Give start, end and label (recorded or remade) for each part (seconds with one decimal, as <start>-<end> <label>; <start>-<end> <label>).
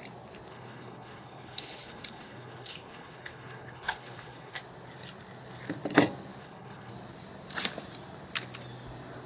0.0-0.5 recorded; 0.5-4.6 remade; 4.6-6.4 recorded; 6.4-6.9 remade; 6.9-9.3 recorded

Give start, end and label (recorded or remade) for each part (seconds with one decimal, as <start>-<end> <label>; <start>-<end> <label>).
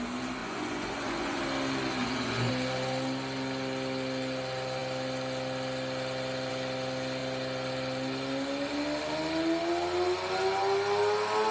0.0-0.4 recorded; 0.4-1.4 remade; 1.4-2.0 recorded; 2.0-2.5 remade; 2.5-11.5 recorded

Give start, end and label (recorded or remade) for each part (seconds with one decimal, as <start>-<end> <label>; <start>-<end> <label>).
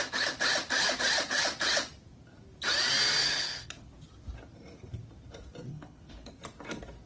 0.0-3.2 recorded; 3.2-3.9 remade; 3.9-5.7 recorded; 5.7-6.3 remade; 6.3-7.1 recorded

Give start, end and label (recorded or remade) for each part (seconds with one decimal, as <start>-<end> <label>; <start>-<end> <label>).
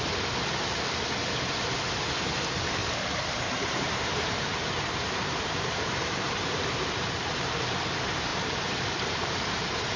0.0-2.8 recorded; 2.8-7.1 remade; 7.1-8.3 recorded; 8.3-10.0 remade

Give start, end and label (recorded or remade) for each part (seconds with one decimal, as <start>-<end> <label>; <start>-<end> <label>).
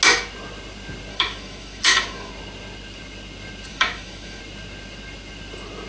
0.0-1.1 recorded; 1.1-2.3 remade; 2.3-3.7 recorded; 3.7-4.4 remade; 4.4-5.9 recorded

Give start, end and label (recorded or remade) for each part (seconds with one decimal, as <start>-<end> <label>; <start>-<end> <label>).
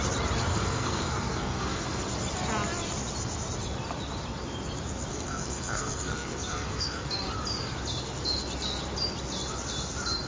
0.0-0.5 recorded; 0.5-2.0 remade; 2.0-5.1 recorded; 5.1-7.1 remade; 7.1-10.3 recorded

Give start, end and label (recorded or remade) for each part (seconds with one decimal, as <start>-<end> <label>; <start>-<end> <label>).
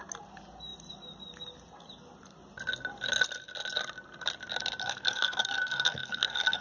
0.0-4.8 recorded; 4.8-6.6 remade